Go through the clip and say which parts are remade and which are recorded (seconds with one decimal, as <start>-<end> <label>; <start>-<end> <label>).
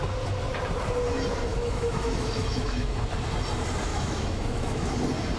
0.0-1.5 recorded; 1.5-3.0 remade; 3.0-3.9 recorded; 3.9-4.9 remade; 4.9-5.4 recorded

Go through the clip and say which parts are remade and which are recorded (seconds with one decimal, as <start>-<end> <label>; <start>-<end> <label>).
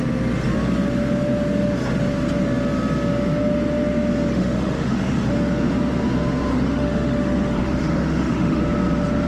0.0-4.3 recorded; 4.3-5.3 remade; 5.3-6.5 recorded; 6.5-8.6 remade; 8.6-9.3 recorded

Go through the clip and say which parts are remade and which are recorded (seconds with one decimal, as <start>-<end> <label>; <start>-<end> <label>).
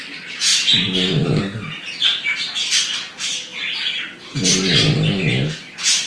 0.0-6.1 recorded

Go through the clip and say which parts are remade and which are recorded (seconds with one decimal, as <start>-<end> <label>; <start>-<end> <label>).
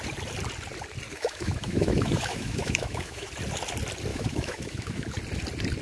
0.0-1.1 recorded; 1.1-3.3 remade; 3.3-4.1 recorded; 4.1-5.1 remade; 5.1-5.8 recorded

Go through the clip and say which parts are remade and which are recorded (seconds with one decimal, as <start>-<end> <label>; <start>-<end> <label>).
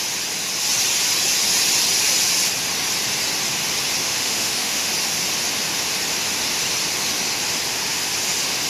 0.0-4.0 recorded; 4.0-4.9 remade; 4.9-8.7 recorded